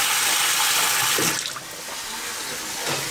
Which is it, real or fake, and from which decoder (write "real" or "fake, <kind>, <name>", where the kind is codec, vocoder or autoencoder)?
real